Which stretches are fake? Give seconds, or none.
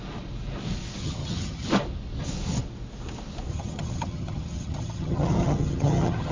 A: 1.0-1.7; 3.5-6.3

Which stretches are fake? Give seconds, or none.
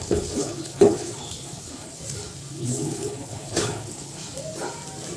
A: 0.0-2.0; 2.6-4.2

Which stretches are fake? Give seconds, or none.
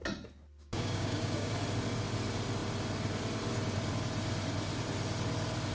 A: 0.6-1.5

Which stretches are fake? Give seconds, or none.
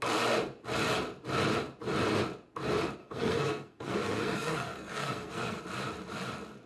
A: 3.0-5.6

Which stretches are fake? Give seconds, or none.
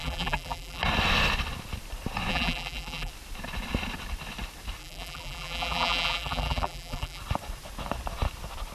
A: 0.0-0.8; 2.3-3.1; 4.8-7.2